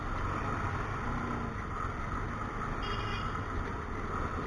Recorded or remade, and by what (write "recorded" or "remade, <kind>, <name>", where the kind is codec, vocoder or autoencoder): recorded